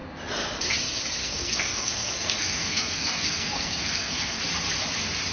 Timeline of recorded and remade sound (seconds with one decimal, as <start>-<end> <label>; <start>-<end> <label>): 0.0-1.2 recorded; 1.2-4.4 remade; 4.4-5.3 recorded